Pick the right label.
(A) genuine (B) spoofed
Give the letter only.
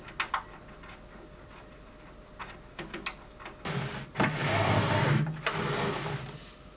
A